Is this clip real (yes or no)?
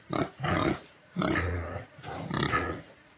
no